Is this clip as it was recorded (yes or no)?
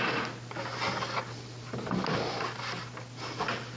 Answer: yes